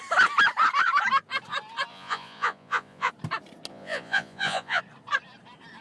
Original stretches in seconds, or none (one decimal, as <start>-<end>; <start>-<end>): 0.0-1.9; 3.1-3.7; 4.8-5.8